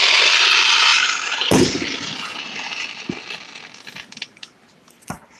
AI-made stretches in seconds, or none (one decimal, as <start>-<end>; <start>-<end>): none